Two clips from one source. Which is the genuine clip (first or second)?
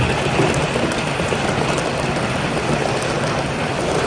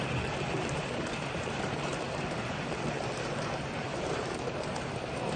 first